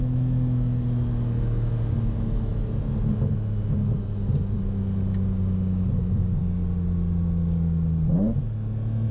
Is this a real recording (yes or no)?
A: yes